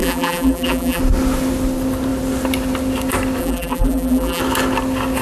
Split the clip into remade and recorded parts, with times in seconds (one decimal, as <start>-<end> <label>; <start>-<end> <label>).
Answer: 0.0-1.0 remade; 1.0-3.4 recorded; 3.4-4.4 remade; 4.4-5.2 recorded